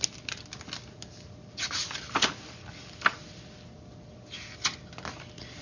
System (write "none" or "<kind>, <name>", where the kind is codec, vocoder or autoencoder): none